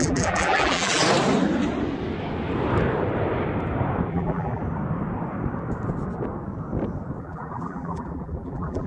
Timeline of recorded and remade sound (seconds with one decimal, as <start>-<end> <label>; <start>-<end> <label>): 0.0-1.0 remade; 1.0-4.1 recorded; 4.1-4.6 remade; 4.6-7.2 recorded; 7.2-8.9 remade